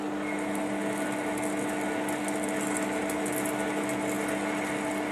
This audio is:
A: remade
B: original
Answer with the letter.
B